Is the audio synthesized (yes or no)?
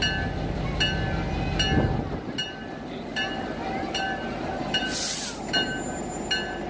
no